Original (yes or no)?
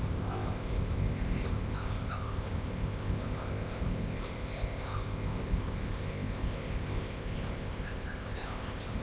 no